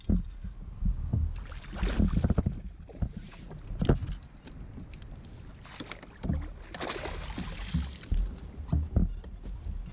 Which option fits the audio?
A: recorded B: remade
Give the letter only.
A